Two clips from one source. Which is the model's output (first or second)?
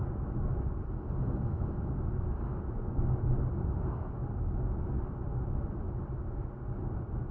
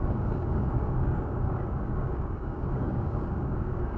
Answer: second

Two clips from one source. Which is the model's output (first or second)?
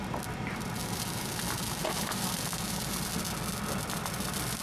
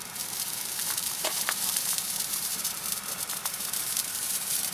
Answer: second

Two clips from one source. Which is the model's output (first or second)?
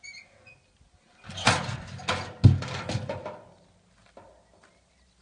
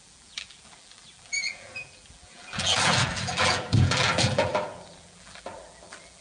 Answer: second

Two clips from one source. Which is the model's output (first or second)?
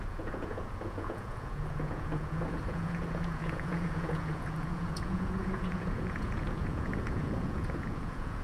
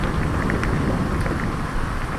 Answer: first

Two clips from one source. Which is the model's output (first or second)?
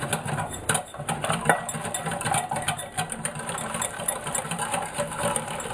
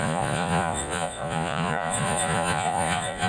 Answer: second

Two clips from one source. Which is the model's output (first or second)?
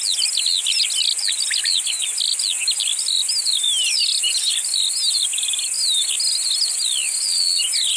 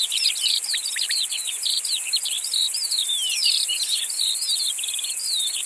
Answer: second